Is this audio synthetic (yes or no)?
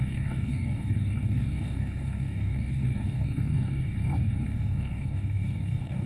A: yes